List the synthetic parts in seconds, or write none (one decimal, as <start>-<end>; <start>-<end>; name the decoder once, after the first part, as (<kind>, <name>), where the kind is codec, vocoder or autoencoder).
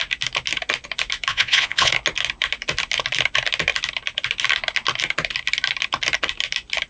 1.3-1.9 (vocoder, Vocos)